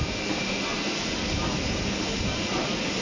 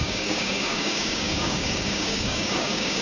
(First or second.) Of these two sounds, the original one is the first